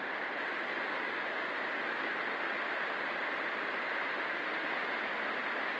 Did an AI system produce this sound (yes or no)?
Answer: no